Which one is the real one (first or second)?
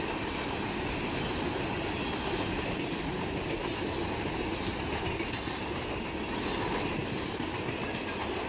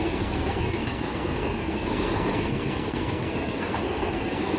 first